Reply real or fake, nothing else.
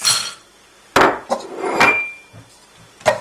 real